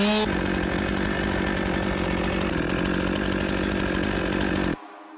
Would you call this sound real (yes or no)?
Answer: yes